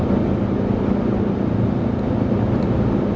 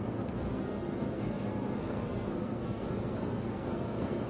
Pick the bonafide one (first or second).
first